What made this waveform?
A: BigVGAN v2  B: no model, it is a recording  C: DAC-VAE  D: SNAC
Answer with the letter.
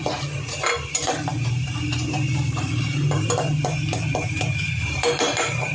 A